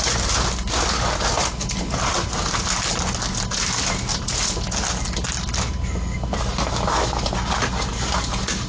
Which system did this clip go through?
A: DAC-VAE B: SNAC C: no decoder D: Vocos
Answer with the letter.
C